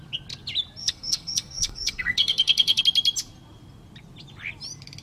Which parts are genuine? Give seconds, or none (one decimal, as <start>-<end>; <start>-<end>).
0.0-0.8; 2.8-5.0